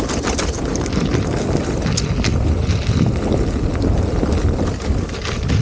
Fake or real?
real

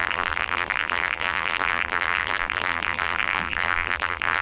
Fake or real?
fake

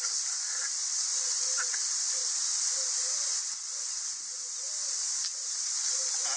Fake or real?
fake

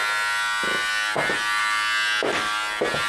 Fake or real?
real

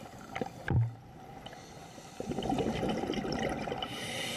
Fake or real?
fake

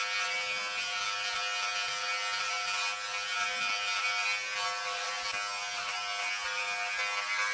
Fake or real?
real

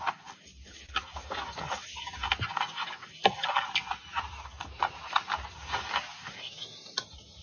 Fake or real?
real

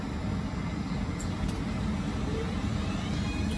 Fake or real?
fake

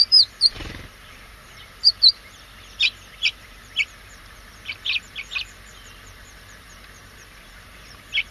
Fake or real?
fake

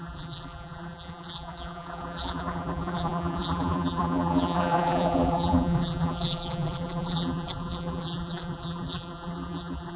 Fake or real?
fake